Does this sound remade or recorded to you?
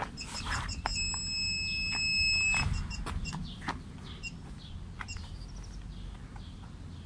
recorded